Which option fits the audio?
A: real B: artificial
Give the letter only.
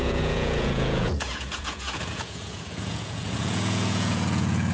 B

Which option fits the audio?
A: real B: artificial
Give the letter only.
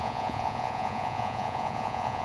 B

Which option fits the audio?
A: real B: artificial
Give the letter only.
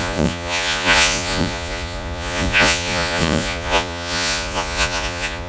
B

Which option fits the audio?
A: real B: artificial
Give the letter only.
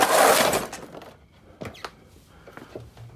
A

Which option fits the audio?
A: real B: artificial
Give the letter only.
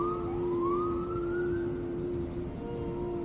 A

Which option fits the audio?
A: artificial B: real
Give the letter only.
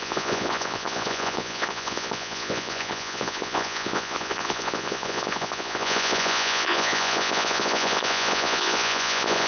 A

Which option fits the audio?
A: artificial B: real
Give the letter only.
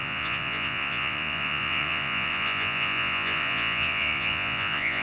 A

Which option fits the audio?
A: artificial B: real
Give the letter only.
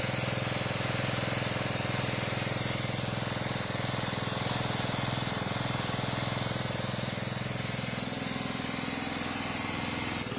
B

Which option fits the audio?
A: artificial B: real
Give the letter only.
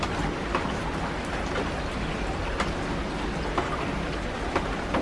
B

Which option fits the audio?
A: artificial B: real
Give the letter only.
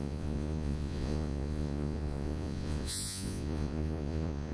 A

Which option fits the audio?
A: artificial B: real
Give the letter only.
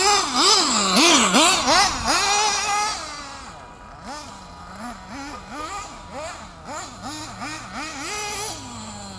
B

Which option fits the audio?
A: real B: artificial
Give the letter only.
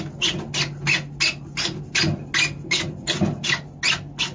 A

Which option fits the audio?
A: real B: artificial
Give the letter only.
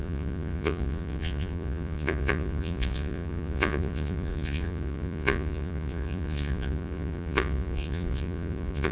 B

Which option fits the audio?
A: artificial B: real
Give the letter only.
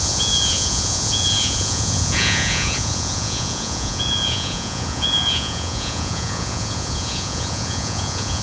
A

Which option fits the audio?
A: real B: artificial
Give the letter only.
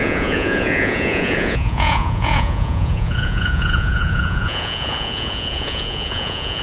B